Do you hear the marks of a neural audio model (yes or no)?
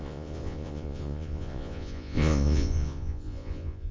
yes